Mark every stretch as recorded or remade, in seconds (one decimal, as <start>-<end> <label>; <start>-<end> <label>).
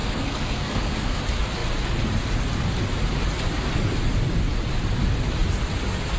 0.0-1.2 remade; 1.2-6.2 recorded